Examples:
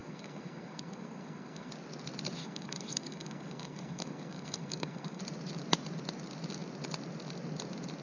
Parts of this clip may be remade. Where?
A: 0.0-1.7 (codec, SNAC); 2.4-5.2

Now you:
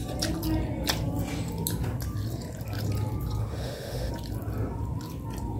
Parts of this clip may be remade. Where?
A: 3.4-4.1 (autoencoder, DAC-VAE)

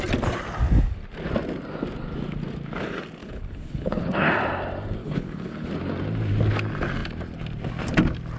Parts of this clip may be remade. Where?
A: 3.2-4.3 (codec, HILCodec); 5.0-5.7

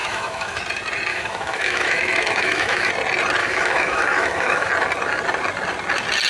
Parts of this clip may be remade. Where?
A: 0.0-0.6 (autoencoder, DAC-VAE); 1.1-2.9; 3.4-4.7

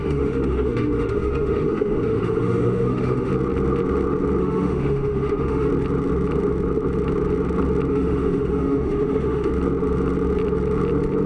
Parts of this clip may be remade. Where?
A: 0.0-3.3 (autoencoder, DAC-VAE); 4.4-5.7; 7.9-9.5

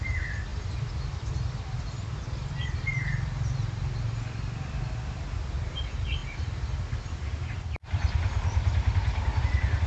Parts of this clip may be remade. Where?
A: none